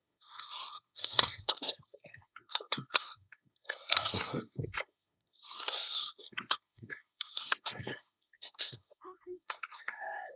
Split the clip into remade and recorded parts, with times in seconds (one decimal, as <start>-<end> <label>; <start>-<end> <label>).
0.0-10.4 remade